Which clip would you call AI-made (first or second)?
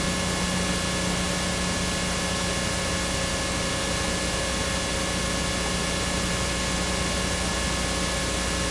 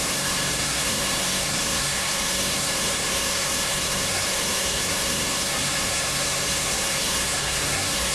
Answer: second